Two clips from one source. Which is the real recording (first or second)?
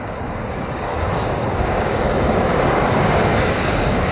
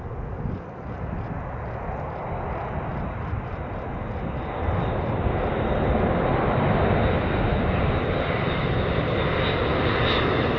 second